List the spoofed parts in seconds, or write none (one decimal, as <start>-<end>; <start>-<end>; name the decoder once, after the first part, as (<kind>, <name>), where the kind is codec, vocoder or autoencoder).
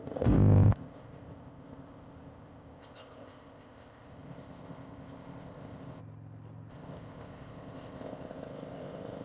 0.0-6.0 (codec, ZipCodec); 6.7-9.2